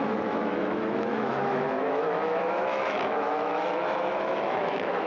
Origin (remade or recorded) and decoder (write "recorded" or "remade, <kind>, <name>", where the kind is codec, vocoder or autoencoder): remade, autoencoder, DAC-VAE